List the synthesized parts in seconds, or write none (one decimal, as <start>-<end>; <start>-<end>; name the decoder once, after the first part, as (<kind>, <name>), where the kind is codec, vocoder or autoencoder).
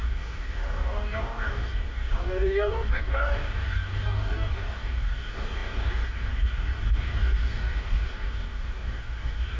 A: 0.0-9.6 (codec, DAC)